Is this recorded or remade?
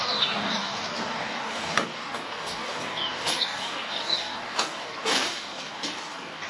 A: remade